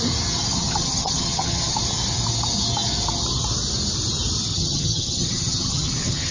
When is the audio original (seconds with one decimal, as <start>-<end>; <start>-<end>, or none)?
0.0-0.5; 1.8-4.5